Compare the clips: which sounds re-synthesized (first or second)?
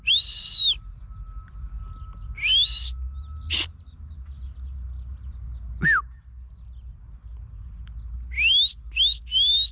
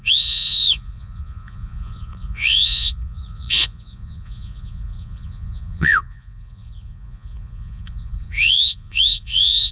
second